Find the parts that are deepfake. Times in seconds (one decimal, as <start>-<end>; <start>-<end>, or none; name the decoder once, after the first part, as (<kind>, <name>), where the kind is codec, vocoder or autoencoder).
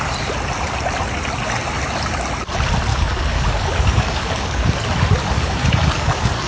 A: 2.9-4.8 (codec, DAC); 5.2-6.5